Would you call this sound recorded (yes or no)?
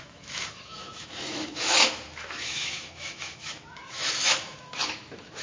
no